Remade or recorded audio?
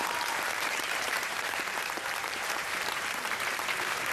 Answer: remade